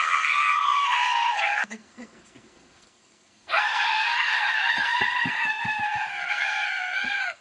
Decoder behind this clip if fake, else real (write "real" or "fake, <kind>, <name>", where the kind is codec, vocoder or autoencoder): fake, codec, SNAC